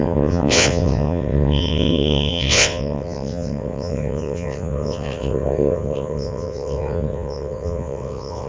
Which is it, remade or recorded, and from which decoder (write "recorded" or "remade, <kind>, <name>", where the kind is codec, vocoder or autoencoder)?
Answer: remade, vocoder, WaveNeXt